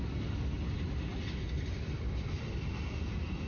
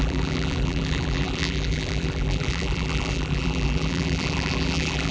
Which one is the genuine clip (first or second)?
first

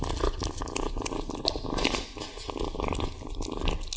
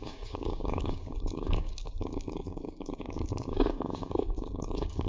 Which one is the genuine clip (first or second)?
first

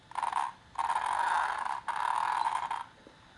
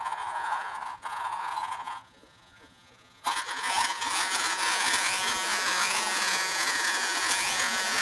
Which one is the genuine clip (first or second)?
first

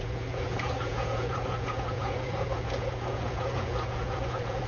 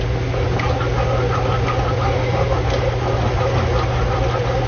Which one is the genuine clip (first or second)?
second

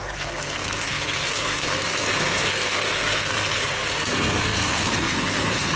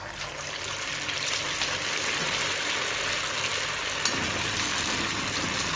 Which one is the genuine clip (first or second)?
second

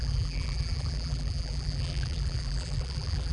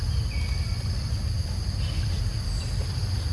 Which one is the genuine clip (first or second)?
second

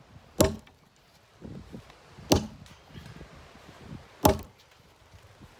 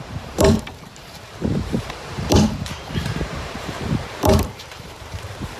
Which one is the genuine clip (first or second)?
first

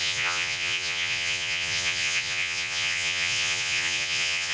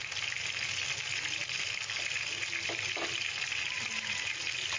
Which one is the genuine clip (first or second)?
second